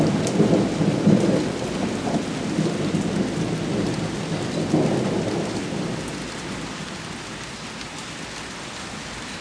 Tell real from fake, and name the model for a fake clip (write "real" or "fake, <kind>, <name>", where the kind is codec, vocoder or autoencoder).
real